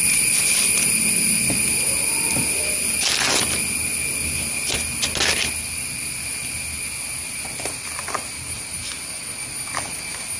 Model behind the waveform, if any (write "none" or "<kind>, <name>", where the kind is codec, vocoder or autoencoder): none